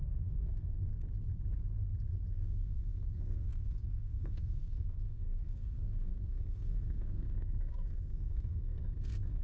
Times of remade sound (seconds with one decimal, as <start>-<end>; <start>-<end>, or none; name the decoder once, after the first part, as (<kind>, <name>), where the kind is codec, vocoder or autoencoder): 0.0-0.9 (codec, SNAC); 2.3-9.4